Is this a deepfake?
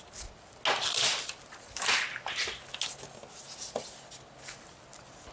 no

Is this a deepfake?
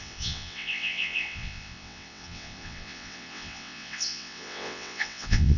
yes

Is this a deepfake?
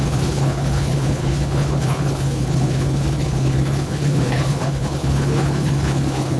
yes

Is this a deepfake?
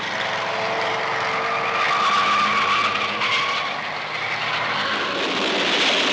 no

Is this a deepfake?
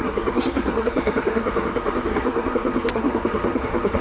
yes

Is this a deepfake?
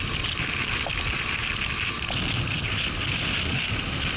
no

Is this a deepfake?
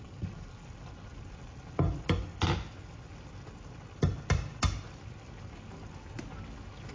no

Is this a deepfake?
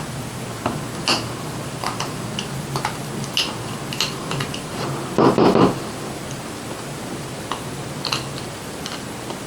no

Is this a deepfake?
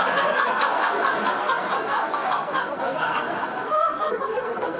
yes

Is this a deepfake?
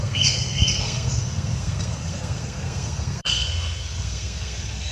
yes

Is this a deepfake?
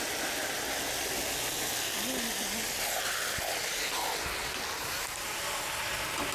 no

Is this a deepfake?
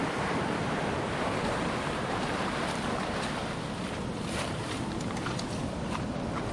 yes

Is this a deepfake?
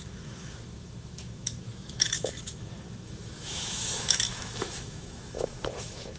yes